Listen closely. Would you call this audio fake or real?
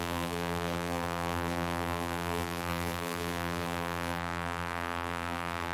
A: fake